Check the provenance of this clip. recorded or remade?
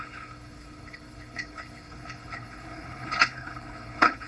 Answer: remade